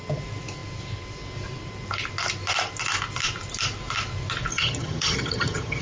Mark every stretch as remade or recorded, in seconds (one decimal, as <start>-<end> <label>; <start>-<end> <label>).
0.0-4.5 recorded; 4.5-5.8 remade